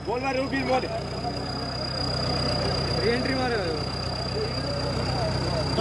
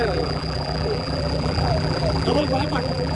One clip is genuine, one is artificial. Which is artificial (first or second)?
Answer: second